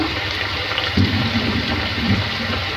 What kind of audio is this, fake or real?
fake